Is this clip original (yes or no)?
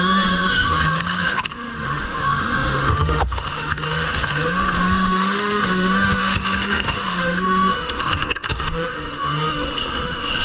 no